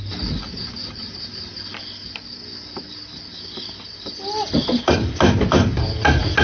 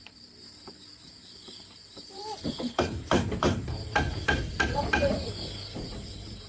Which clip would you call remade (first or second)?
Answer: second